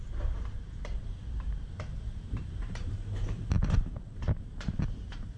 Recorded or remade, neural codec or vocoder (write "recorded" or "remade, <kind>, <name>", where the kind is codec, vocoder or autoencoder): remade, vocoder, BigVGAN v2